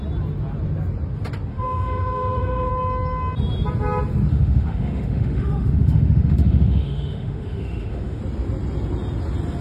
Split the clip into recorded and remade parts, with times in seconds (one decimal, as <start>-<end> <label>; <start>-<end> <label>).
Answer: 0.0-1.5 recorded; 1.5-2.7 remade; 2.7-4.3 recorded; 4.3-8.2 remade; 8.2-9.6 recorded